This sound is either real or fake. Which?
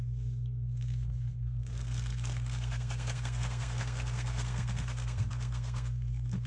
fake